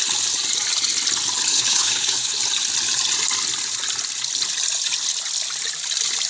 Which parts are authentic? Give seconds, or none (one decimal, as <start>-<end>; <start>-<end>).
0.0-1.5; 2.4-6.3